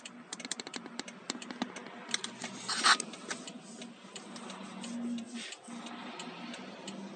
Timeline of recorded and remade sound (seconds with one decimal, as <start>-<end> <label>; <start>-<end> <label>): 0.0-7.2 recorded